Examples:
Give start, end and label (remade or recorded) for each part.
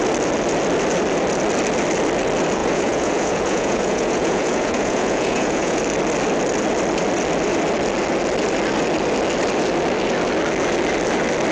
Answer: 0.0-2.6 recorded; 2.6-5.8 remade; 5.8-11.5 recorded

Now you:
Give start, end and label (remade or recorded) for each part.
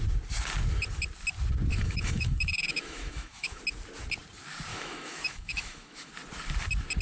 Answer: 0.0-1.7 recorded; 1.7-3.6 remade; 3.6-4.7 recorded; 4.7-6.1 remade; 6.1-7.0 recorded